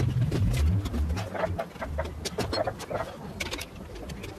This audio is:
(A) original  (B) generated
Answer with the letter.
A